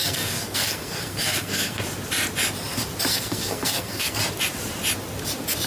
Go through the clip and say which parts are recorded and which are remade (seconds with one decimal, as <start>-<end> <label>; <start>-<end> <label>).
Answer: 0.0-1.8 remade; 1.8-3.1 recorded; 3.1-4.2 remade; 4.2-5.7 recorded